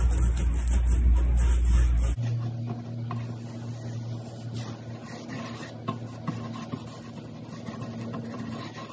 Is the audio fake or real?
real